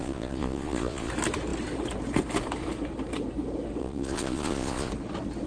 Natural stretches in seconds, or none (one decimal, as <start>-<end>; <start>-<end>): 1.1-3.8; 4.9-5.5